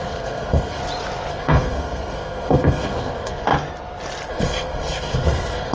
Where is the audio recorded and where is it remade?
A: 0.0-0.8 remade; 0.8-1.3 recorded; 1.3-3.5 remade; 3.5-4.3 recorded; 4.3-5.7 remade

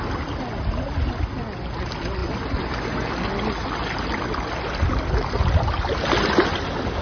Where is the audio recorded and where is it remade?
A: 0.0-7.0 recorded

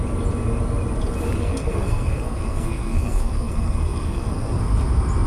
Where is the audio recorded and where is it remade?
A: 0.0-1.4 recorded; 1.4-4.6 remade; 4.6-5.3 recorded

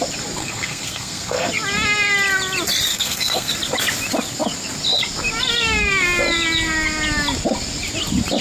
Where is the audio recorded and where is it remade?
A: 0.0-0.4 recorded; 0.4-1.5 remade; 1.5-2.9 recorded; 2.9-3.5 remade; 3.5-8.4 recorded

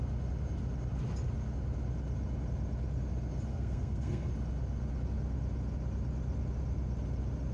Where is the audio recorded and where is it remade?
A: 0.0-3.5 recorded; 3.5-4.3 remade; 4.3-7.5 recorded